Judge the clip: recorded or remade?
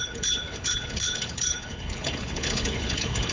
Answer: remade